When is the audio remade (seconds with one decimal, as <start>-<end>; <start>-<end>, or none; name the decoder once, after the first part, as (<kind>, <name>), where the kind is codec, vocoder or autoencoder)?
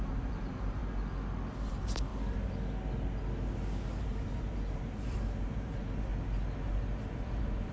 0.0-0.8 (vocoder, BigVGAN v2); 1.7-2.1; 4.0-6.1; 6.7-7.7